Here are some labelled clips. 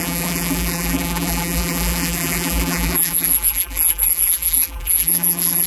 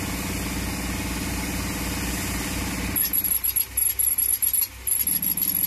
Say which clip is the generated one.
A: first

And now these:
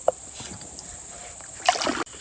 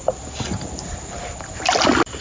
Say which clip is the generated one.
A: first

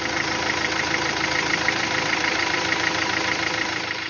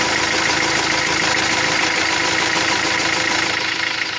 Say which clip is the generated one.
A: first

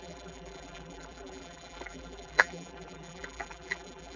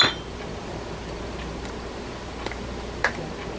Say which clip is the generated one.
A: first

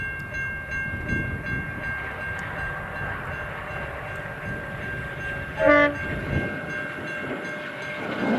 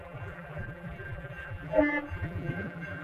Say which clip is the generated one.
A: second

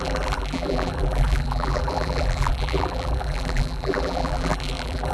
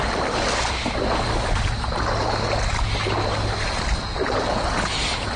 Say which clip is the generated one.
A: first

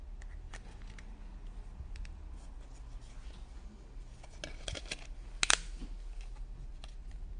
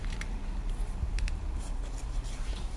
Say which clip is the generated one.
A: second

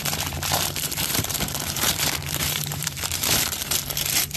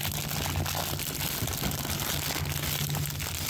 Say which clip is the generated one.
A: first